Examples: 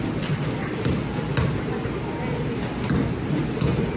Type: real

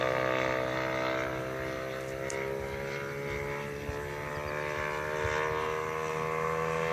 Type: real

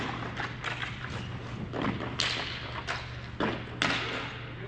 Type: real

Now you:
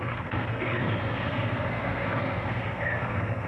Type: fake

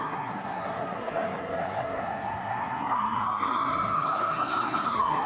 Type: fake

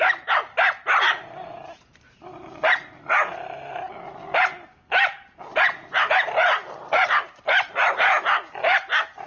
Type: real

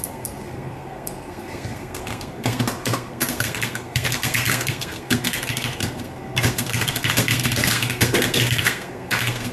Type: fake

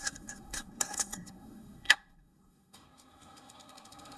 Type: fake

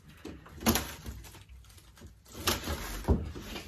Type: real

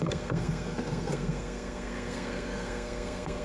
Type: fake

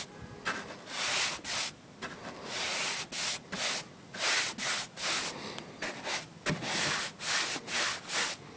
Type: real